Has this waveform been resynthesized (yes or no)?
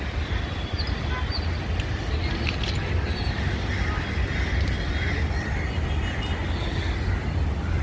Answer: no